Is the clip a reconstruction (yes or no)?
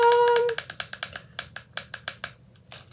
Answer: no